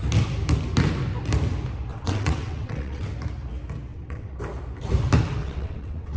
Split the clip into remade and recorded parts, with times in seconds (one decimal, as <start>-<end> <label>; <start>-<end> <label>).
0.0-1.9 recorded; 1.9-3.1 remade; 3.1-3.9 recorded; 3.9-4.4 remade; 4.4-5.4 recorded; 5.4-6.2 remade